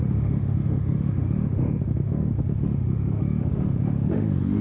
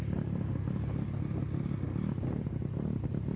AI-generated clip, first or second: first